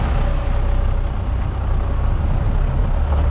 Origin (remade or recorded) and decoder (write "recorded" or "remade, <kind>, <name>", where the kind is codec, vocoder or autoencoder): recorded